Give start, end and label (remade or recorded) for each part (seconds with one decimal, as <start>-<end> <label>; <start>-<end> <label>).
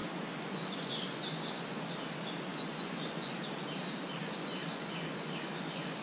0.0-1.9 remade; 1.9-2.5 recorded; 2.5-3.3 remade; 3.3-4.2 recorded; 4.2-6.0 remade